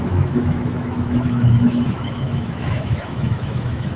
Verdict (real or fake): fake